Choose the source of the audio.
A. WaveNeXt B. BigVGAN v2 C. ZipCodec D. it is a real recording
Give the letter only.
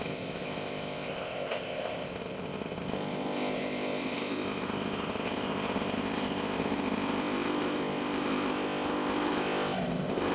C